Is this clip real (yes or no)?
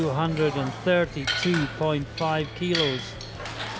yes